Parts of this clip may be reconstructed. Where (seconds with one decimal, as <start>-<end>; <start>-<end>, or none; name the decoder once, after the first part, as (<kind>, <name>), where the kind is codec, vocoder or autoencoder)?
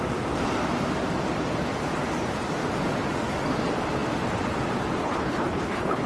5.0-6.1 (codec, HILCodec)